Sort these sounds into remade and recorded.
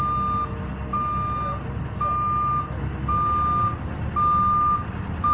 recorded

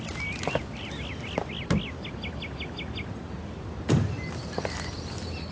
recorded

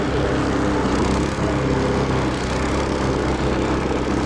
recorded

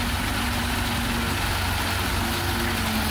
recorded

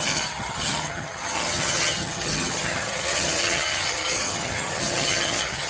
remade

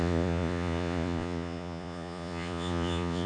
remade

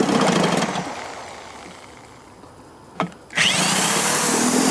recorded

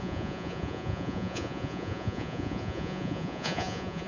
remade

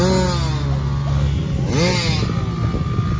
recorded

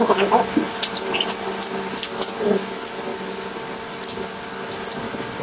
recorded